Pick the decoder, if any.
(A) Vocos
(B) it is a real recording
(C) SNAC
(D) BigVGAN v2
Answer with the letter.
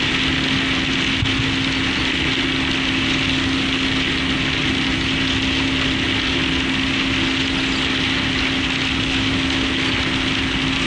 B